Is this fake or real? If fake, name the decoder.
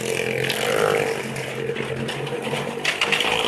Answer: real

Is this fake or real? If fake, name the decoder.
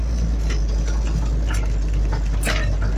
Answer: real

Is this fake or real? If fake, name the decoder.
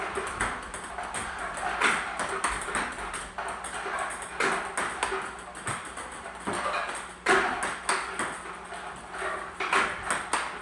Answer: real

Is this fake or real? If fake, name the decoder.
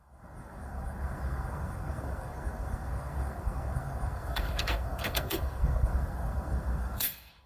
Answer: fake, codec, SNAC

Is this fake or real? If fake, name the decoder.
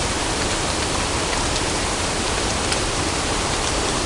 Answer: fake, vocoder, BigVGAN v2